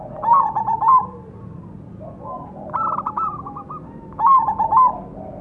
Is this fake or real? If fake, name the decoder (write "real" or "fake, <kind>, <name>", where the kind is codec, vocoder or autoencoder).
real